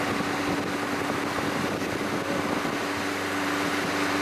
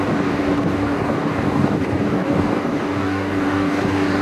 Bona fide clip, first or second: first